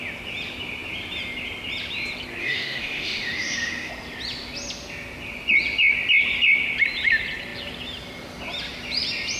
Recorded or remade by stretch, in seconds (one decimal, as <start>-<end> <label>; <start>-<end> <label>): 0.0-2.4 recorded; 2.4-3.9 remade; 3.9-9.4 recorded